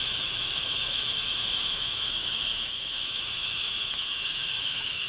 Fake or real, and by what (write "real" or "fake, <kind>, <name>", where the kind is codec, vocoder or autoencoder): fake, autoencoder, DAC-VAE